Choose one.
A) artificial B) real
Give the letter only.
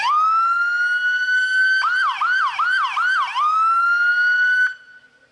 B